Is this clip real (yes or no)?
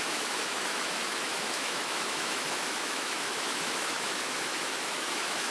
no